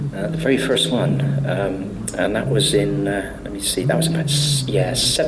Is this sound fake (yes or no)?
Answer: no